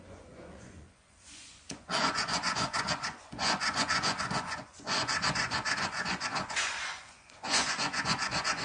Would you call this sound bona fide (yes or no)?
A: no